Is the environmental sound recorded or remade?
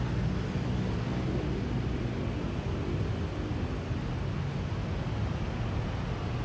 recorded